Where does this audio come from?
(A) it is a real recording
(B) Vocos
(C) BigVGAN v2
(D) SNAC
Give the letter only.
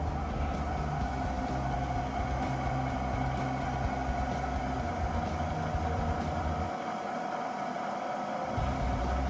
A